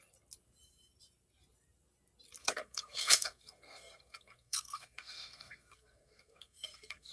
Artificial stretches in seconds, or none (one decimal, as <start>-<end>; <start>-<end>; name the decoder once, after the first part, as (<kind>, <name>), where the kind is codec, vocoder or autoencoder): 2.4-7.1 (codec, SNAC)